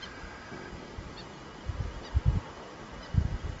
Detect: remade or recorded recorded